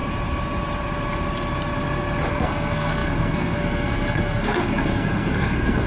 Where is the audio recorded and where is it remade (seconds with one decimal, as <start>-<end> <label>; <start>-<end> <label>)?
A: 0.0-2.3 recorded; 2.3-5.9 remade